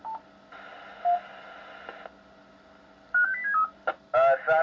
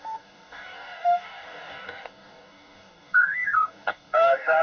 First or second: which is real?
first